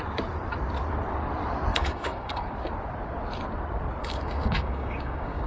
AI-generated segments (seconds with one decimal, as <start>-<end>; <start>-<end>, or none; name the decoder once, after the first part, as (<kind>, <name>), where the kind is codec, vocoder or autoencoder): 1.7-2.5 (codec, DAC); 4.0-5.5